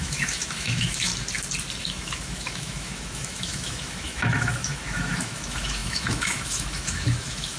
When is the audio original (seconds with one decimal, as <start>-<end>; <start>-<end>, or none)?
1.1-1.8